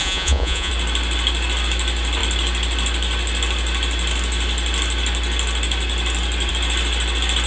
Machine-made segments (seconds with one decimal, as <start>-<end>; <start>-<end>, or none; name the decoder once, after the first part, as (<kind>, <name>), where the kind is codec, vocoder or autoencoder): 0.0-0.7 (vocoder, Vocos)